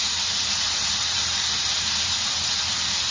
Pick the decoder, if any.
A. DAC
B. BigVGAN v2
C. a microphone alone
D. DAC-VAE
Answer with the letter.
B